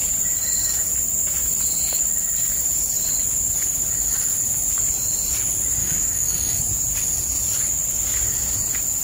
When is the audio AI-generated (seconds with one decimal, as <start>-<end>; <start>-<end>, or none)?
5.8-6.6